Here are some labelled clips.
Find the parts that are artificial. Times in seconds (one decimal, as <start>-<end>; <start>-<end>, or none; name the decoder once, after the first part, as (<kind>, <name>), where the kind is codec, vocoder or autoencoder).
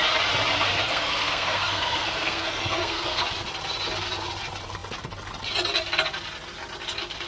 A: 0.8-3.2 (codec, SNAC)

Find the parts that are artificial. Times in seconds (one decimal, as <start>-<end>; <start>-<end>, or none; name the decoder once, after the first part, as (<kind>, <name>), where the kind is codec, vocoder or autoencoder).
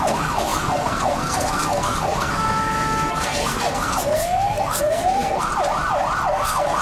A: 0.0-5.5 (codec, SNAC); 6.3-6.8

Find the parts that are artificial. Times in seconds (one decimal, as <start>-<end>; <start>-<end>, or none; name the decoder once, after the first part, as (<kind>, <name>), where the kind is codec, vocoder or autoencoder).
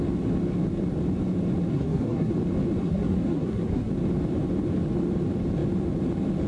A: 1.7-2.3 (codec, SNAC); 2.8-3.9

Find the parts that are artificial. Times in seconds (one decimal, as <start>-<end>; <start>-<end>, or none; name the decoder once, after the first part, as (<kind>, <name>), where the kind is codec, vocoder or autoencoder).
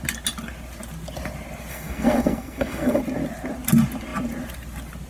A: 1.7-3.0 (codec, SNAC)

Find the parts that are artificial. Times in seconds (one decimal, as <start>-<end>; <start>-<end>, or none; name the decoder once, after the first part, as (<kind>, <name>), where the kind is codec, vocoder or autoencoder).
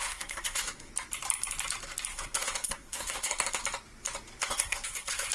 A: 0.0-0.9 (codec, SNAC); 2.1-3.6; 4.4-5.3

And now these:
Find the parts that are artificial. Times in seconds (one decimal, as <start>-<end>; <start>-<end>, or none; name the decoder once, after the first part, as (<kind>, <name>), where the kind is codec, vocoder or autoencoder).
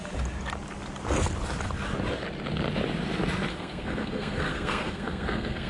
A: 3.5-5.7 (codec, SNAC)